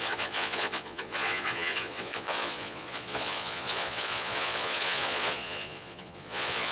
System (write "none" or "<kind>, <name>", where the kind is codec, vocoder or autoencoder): vocoder, Vocos